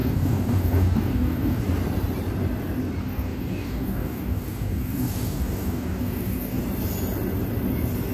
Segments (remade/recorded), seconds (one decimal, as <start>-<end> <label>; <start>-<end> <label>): 0.0-1.6 remade; 1.6-3.0 recorded; 3.0-6.6 remade; 6.6-8.1 recorded